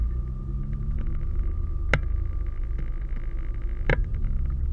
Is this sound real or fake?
real